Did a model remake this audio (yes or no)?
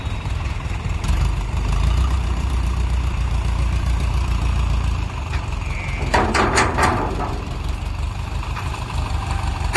yes